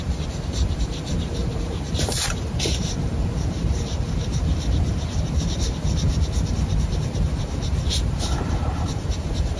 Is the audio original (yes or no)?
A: no